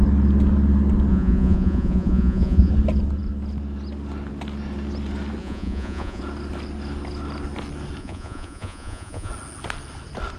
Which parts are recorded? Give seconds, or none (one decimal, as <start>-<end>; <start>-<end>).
0.0-1.1; 2.7-5.4; 6.2-8.0; 9.3-10.4